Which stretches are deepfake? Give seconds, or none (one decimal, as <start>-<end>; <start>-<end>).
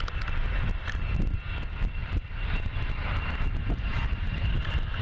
2.0-5.0